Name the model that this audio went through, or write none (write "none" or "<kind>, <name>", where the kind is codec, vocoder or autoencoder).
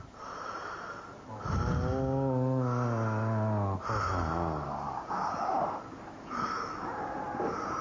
none